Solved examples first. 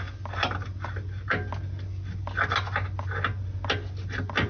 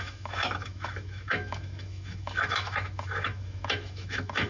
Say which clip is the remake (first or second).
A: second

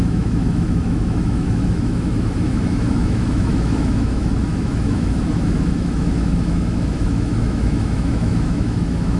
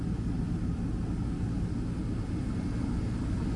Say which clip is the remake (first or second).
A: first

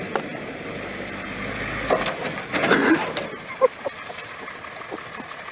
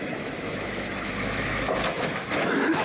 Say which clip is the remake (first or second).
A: second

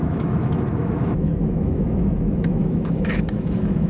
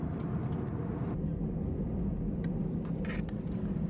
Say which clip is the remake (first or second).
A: first